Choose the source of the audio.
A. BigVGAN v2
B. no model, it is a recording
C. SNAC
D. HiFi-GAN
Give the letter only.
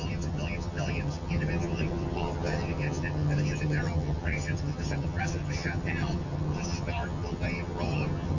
D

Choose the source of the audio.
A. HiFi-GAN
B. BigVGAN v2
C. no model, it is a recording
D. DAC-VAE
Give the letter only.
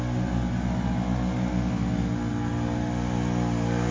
C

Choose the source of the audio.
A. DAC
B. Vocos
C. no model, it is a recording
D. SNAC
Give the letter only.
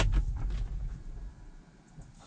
C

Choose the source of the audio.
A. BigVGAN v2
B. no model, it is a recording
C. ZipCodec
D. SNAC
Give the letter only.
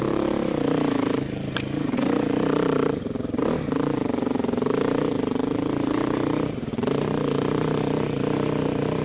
A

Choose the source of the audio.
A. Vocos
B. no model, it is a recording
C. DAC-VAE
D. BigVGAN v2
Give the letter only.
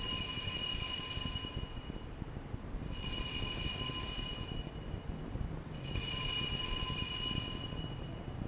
B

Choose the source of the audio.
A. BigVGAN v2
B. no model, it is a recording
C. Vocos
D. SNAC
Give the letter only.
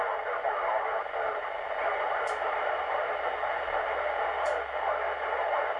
B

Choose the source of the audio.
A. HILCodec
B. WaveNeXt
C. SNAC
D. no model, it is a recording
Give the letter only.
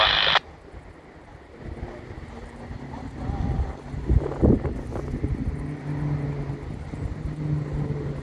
D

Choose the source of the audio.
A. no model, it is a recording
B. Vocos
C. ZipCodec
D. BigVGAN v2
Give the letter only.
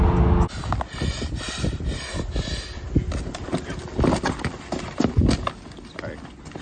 A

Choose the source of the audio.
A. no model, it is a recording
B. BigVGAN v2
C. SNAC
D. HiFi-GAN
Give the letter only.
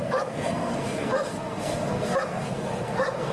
C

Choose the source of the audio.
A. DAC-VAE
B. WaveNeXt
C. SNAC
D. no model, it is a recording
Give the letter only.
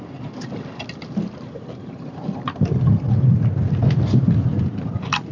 D